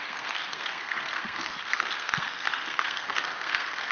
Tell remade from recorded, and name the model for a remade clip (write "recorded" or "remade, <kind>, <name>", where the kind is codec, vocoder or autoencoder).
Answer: remade, codec, SNAC